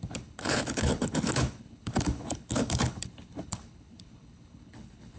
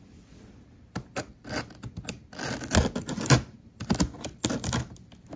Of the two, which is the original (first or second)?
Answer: second